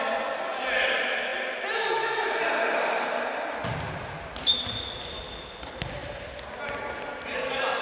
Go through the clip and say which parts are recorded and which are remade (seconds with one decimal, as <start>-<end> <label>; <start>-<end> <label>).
0.0-7.8 recorded